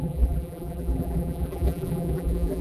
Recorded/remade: remade